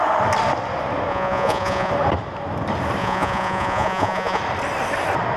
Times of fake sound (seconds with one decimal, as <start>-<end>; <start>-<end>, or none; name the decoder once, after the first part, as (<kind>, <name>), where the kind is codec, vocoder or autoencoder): 1.1-1.9 (vocoder, Vocos); 3.0-4.4